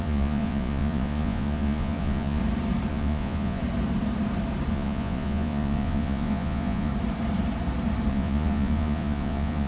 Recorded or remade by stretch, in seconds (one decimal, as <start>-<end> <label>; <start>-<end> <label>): 0.0-2.4 remade; 2.4-2.9 recorded; 2.9-3.6 remade; 3.6-4.7 recorded; 4.7-6.9 remade; 6.9-8.1 recorded; 8.1-9.7 remade